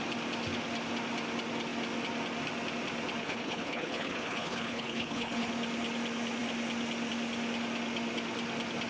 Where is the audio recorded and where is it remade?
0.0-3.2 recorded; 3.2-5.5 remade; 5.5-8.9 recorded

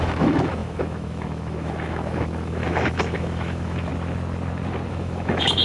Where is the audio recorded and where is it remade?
0.0-3.9 remade; 3.9-4.9 recorded; 4.9-5.6 remade

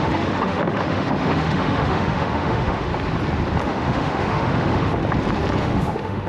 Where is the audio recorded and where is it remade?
0.0-2.9 remade; 2.9-3.6 recorded; 3.6-5.0 remade; 5.0-5.6 recorded; 5.6-6.3 remade